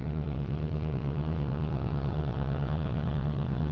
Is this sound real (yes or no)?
no